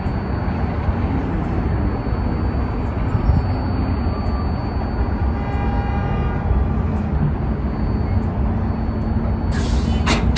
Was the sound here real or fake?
real